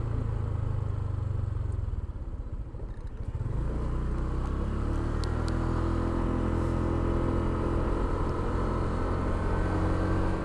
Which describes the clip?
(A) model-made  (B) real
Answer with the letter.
B